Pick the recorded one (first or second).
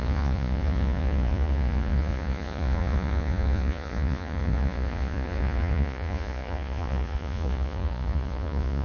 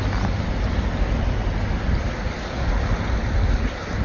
second